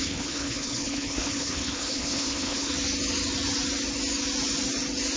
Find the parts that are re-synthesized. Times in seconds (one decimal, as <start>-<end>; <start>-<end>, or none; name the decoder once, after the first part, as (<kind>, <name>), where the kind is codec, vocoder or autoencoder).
0.0-2.7 (codec, HILCodec)